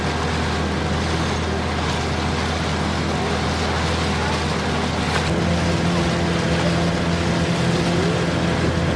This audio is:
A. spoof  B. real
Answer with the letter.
B